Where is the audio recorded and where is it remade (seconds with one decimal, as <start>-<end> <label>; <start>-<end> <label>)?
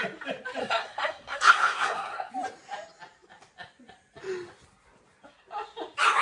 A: 0.0-0.6 recorded; 0.6-2.3 remade; 2.3-6.2 recorded